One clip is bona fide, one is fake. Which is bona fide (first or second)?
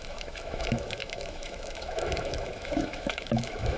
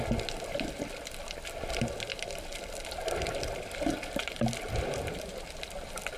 second